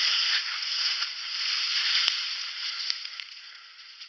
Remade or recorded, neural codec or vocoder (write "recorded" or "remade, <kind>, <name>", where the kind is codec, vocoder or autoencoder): remade, vocoder, Vocos